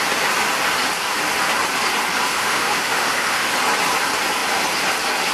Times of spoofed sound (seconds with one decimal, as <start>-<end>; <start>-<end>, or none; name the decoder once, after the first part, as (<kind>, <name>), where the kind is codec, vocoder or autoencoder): 2.3-3.5 (autoencoder, DAC-VAE)